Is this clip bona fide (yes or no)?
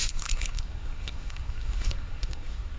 no